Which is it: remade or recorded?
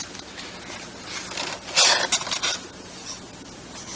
recorded